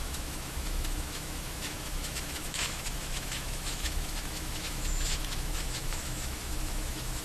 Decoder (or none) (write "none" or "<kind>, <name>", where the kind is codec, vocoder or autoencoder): autoencoder, DAC-VAE